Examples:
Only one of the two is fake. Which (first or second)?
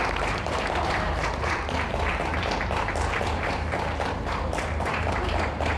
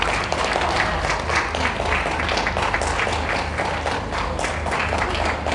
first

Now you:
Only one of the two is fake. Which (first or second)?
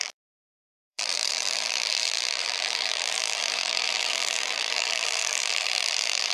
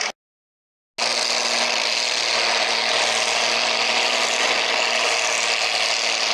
first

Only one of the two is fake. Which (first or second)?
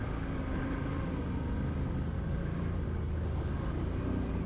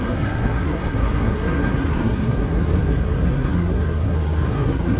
second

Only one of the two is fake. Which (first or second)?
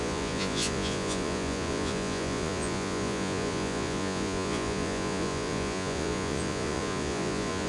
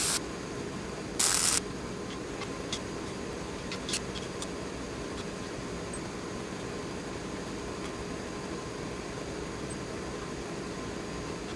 first